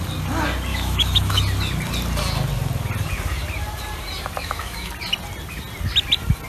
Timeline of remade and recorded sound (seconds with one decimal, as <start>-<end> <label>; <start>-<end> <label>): 0.0-0.7 recorded; 0.7-1.4 remade; 1.4-4.4 recorded; 4.4-4.9 remade; 4.9-6.5 recorded